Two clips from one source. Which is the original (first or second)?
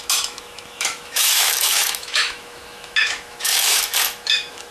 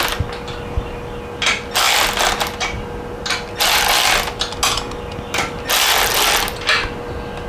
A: second